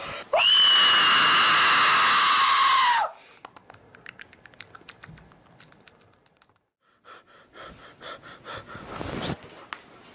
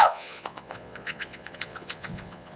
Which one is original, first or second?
first